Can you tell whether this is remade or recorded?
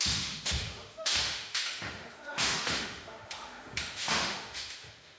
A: remade